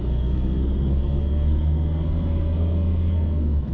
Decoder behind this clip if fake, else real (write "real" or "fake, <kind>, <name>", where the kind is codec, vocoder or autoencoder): fake, codec, SNAC